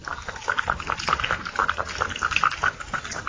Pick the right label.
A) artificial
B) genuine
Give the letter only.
B